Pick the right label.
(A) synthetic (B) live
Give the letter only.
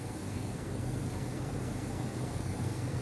A